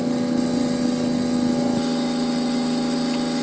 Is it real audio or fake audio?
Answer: real